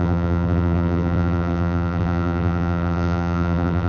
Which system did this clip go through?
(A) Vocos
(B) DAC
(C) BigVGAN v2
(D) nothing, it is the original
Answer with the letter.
C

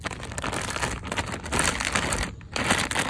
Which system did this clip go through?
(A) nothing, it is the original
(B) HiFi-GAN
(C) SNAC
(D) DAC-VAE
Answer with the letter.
A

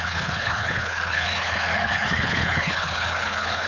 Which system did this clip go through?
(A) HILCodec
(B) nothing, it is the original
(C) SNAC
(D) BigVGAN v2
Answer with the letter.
A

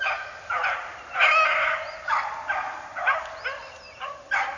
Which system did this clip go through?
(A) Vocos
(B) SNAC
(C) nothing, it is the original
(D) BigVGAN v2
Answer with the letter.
C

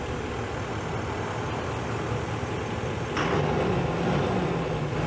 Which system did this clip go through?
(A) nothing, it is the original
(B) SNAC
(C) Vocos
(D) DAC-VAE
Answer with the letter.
A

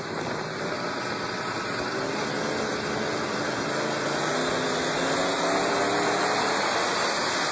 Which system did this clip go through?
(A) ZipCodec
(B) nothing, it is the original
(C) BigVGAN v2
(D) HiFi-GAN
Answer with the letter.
B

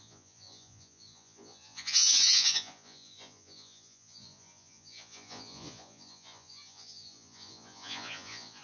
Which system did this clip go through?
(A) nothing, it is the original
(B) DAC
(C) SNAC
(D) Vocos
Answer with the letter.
D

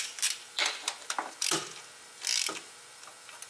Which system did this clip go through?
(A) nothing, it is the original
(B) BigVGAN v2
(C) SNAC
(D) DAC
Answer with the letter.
B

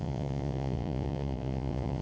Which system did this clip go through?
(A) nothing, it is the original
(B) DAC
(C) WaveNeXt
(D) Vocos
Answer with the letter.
D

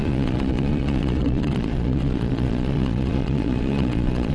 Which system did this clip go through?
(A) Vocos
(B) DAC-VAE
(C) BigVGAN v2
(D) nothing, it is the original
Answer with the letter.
A